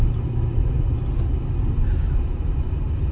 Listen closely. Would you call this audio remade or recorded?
recorded